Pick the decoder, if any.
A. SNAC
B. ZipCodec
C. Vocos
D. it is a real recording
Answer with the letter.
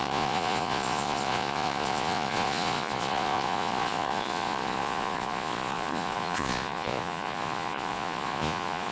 C